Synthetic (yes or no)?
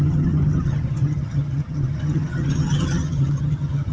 yes